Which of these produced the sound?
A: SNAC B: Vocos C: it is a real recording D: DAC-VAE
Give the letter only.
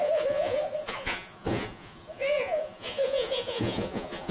B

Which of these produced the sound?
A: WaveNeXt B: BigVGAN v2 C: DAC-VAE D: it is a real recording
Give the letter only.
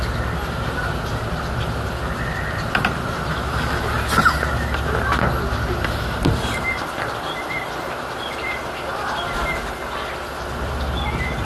D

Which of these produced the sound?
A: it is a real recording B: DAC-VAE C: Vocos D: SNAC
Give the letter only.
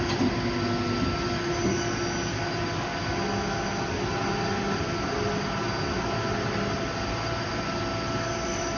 A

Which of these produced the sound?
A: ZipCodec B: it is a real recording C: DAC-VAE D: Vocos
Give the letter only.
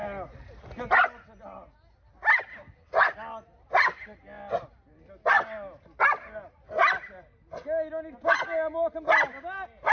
B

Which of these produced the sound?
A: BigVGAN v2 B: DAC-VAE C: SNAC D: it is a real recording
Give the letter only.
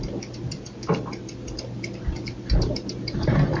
D